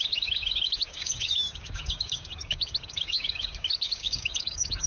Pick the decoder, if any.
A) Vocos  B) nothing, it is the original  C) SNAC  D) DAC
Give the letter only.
D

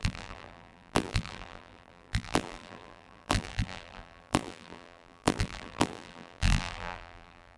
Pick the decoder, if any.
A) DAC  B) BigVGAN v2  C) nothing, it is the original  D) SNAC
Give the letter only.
B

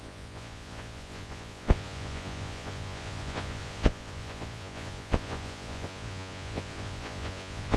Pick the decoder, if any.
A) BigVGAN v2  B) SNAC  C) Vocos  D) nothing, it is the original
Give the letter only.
C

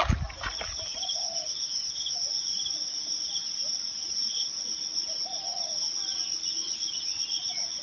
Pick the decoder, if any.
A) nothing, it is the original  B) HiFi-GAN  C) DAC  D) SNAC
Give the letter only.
A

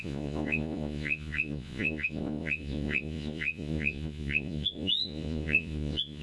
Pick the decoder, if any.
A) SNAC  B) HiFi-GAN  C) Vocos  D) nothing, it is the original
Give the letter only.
C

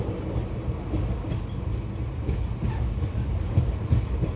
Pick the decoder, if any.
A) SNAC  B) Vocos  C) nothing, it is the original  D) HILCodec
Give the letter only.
C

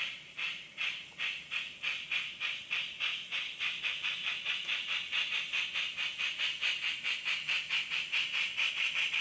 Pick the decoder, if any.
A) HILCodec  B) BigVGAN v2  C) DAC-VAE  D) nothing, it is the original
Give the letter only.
B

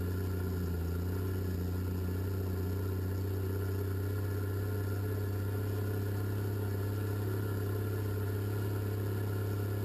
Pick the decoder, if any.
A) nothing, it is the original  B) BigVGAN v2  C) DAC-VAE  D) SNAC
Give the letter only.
A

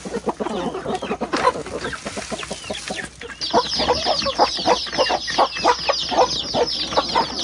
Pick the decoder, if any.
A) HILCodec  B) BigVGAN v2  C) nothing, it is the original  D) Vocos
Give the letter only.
C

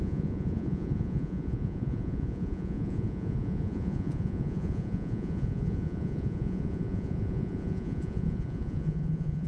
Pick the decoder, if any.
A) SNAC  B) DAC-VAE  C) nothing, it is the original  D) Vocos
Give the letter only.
D